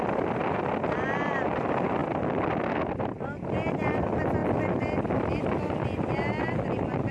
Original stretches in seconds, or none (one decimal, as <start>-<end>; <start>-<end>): 0.0-7.1